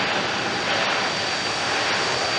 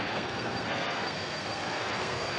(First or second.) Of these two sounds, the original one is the first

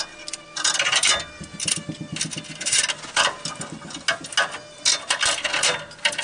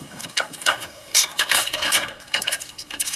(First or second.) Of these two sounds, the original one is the first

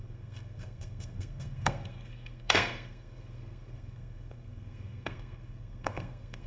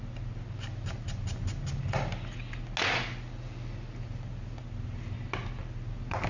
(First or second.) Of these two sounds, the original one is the second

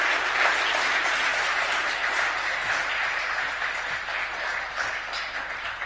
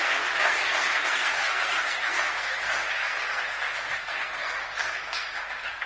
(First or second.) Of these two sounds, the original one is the first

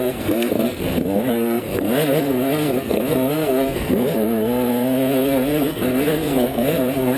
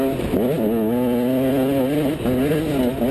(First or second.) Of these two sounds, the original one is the second